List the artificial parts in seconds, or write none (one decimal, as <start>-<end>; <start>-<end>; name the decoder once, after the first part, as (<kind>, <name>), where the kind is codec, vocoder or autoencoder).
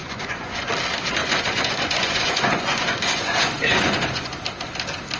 0.0-0.7 (vocoder, Vocos); 1.2-4.3